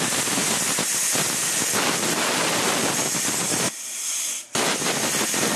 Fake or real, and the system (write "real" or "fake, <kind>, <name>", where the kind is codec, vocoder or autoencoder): real